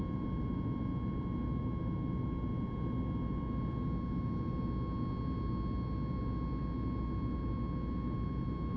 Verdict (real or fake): real